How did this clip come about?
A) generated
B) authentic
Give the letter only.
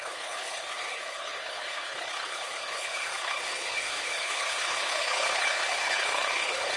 A